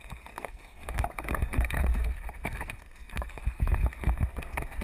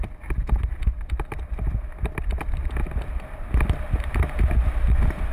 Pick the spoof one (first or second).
first